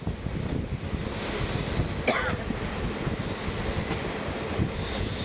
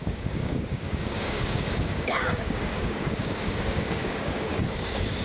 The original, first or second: first